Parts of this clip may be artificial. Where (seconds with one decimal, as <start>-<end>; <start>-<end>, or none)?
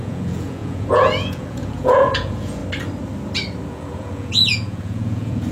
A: 0.0-2.6; 3.7-5.5